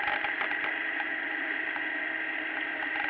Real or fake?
real